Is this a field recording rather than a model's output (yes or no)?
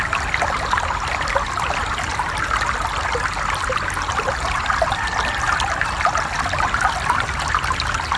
yes